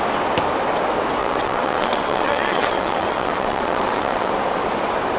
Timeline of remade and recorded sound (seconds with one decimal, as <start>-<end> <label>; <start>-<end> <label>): 0.0-1.2 recorded; 1.2-4.3 remade; 4.3-5.2 recorded

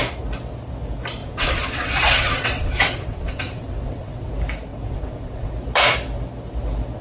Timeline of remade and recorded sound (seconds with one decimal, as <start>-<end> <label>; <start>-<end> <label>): 0.0-1.2 recorded; 1.2-4.3 remade; 4.3-4.7 recorded; 4.7-5.5 remade; 5.5-7.0 recorded

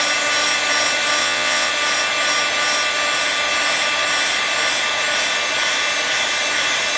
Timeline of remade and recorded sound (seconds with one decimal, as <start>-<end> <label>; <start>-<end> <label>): 0.0-1.2 recorded; 1.2-1.7 remade; 1.7-7.0 recorded

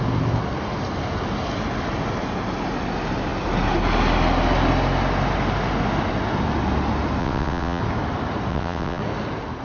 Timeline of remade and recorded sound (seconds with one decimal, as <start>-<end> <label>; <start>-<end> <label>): 0.0-7.2 recorded; 7.2-7.8 remade; 7.8-8.5 recorded; 8.5-9.0 remade; 9.0-9.6 recorded

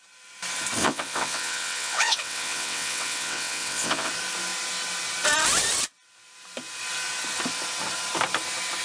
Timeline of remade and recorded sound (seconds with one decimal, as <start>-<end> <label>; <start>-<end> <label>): 0.0-0.8 recorded; 0.8-4.1 remade; 4.1-8.8 recorded